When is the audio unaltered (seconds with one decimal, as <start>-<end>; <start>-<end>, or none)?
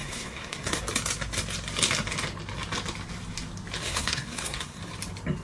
0.8-3.8; 4.8-5.4